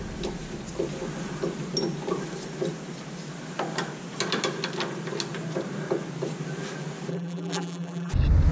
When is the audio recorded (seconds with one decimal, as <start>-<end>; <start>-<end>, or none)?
0.0-7.1; 8.1-8.5